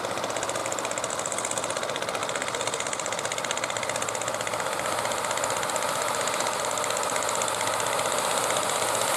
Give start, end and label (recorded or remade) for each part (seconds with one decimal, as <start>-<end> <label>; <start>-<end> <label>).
0.0-0.6 recorded; 0.6-1.1 remade; 1.1-2.2 recorded; 2.2-6.6 remade; 6.6-9.2 recorded

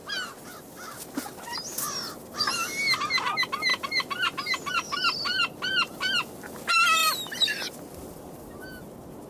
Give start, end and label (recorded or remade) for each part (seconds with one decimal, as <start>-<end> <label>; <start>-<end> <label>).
0.0-3.7 recorded; 3.7-4.7 remade; 4.7-5.3 recorded; 5.3-6.1 remade; 6.1-9.3 recorded

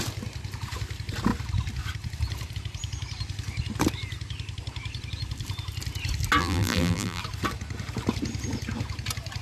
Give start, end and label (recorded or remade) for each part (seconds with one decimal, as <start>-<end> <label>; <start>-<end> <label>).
0.0-6.4 recorded; 6.4-7.2 remade; 7.2-9.4 recorded